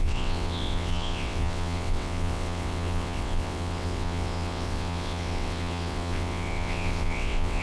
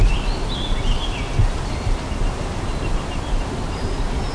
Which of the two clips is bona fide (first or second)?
second